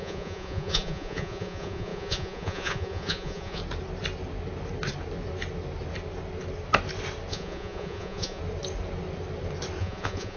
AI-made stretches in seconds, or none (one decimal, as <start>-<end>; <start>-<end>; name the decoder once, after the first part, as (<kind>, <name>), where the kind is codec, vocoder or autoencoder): 0.0-3.6 (vocoder, Vocos); 7.3-8.4; 9.8-10.4

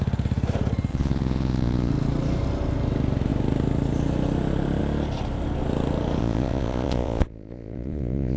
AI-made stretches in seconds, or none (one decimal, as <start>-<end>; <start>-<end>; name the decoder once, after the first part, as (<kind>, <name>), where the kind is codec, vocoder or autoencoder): 0.9-1.9 (vocoder, Vocos); 6.2-8.4

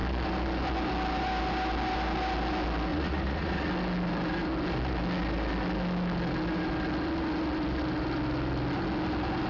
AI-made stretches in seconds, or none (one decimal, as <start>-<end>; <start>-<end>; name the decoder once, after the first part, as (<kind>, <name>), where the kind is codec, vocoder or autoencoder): 2.9-3.7 (vocoder, Vocos)

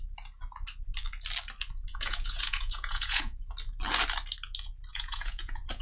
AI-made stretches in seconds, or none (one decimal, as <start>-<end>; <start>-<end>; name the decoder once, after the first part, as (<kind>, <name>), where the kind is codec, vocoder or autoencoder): 1.9-3.5 (vocoder, Vocos); 4.9-5.8

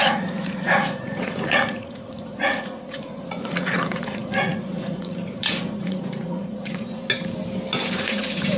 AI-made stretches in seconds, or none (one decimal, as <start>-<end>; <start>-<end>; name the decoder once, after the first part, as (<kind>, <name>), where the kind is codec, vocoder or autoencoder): 0.0-7.0 (vocoder, Vocos); 8.0-8.6

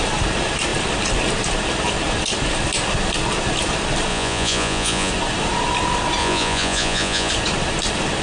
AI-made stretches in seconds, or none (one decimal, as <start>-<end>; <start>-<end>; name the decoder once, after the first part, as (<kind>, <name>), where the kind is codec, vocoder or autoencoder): 4.1-5.1 (vocoder, Vocos); 6.2-7.3

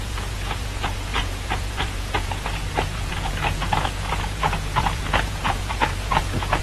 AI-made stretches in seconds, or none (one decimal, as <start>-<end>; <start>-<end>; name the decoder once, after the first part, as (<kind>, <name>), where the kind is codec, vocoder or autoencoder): 0.0-6.6 (vocoder, Vocos)

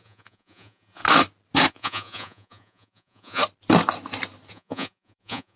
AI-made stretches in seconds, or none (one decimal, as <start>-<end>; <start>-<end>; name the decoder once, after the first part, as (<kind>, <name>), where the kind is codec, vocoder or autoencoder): 0.0-1.0 (vocoder, Vocos); 1.7-3.4; 4.5-5.6